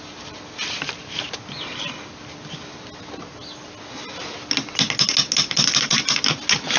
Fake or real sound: real